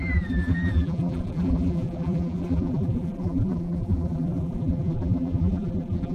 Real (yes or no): no